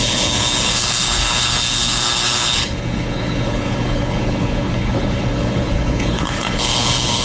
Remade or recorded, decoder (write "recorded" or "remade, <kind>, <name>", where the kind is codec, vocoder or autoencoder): remade, codec, HILCodec